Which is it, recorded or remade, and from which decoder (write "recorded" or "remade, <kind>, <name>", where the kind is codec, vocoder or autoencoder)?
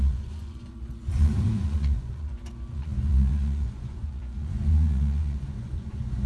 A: remade, vocoder, Vocos